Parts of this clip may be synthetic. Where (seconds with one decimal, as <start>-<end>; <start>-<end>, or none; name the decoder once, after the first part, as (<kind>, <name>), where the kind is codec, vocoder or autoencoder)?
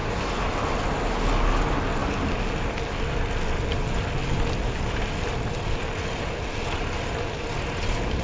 none